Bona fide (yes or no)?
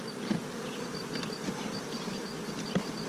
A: yes